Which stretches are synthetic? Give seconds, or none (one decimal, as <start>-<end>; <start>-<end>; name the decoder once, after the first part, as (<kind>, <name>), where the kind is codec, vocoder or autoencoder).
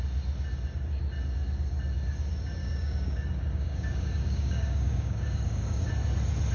2.6-5.9 (codec, DAC)